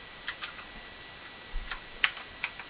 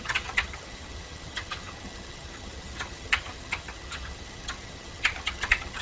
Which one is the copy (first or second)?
second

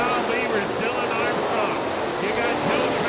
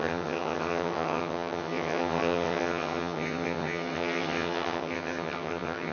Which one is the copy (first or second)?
second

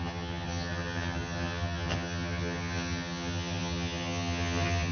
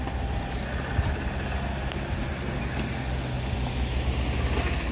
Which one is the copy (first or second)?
first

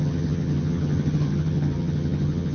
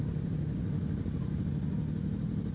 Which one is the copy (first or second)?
first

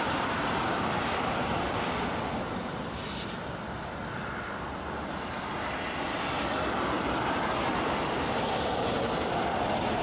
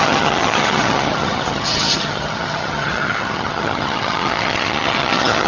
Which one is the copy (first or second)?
second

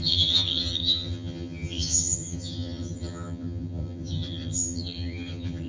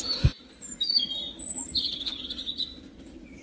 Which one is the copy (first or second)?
first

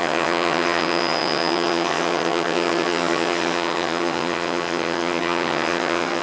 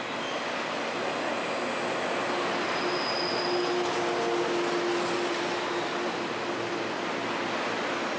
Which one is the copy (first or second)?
first